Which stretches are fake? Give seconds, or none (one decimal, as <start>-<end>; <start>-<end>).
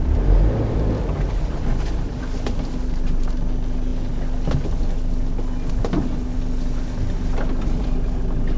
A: none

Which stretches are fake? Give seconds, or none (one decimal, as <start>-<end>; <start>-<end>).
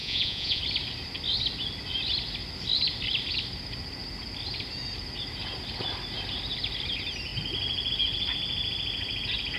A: 0.0-0.6